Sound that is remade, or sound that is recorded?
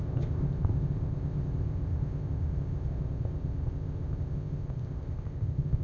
remade